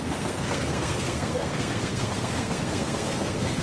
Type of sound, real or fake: fake